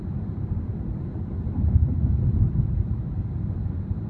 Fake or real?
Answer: real